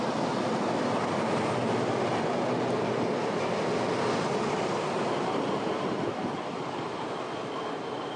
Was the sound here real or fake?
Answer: real